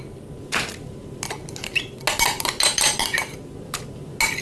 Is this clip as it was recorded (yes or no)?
yes